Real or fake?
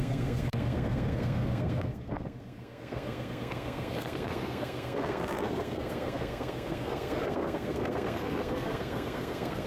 fake